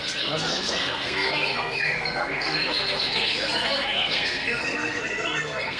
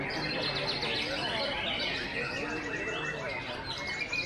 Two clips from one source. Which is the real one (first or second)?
second